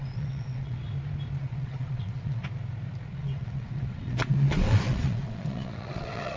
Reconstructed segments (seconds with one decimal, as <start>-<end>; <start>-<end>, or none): 0.0-0.8; 1.4-2.4; 3.2-6.4